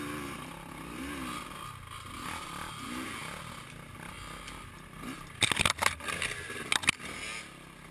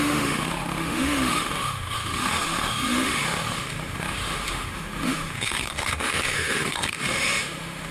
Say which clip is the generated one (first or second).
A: second